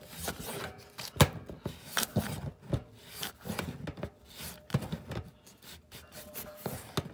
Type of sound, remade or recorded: recorded